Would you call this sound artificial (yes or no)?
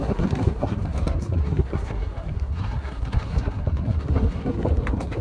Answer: yes